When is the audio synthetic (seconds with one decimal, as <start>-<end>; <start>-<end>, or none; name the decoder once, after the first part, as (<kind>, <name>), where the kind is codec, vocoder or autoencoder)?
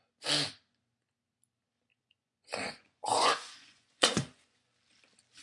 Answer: 1.9-4.7 (vocoder, Vocos)